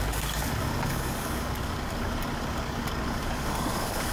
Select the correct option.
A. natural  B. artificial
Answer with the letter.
B